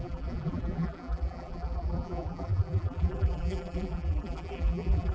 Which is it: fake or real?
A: fake